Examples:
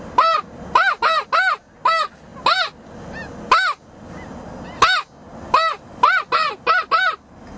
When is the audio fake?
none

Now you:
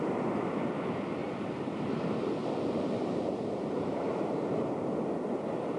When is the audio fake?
1.2-4.7 (vocoder, BigVGAN v2)

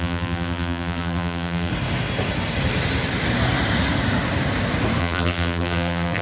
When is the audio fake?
0.0-1.7 (vocoder, BigVGAN v2); 5.0-6.2